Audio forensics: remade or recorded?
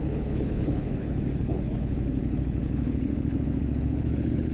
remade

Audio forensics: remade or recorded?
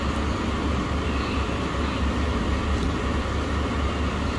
recorded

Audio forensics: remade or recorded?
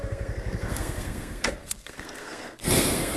remade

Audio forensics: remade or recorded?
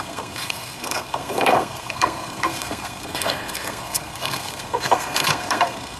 remade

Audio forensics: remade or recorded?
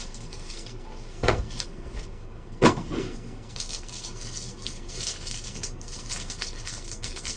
remade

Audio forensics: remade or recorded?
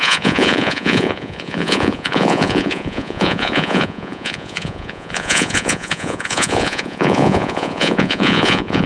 remade